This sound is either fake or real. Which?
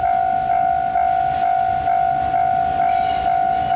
real